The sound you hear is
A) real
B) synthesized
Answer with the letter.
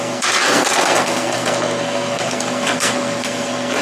B